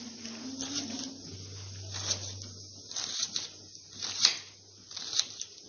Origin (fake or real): real